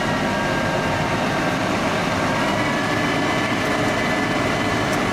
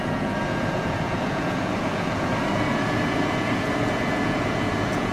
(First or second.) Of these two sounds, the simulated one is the second